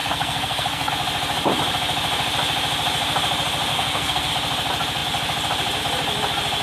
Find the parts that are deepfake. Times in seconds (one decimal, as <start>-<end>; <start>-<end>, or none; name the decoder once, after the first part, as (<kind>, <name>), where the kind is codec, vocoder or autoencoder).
0.0-0.9 (codec, SNAC); 3.7-4.3